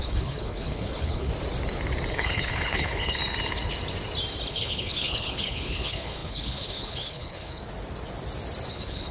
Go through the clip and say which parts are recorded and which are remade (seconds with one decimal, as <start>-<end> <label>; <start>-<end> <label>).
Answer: 0.0-1.3 remade; 1.3-2.1 recorded; 2.1-3.2 remade; 3.2-4.5 recorded; 4.5-7.6 remade; 7.6-8.7 recorded; 8.7-9.1 remade